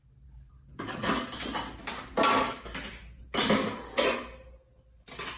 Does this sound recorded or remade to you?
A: recorded